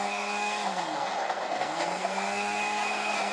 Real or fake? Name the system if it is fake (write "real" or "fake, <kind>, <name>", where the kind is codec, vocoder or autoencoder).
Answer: fake, codec, SNAC